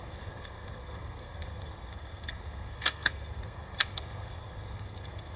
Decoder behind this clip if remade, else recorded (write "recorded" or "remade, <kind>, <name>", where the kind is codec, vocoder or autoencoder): remade, codec, SNAC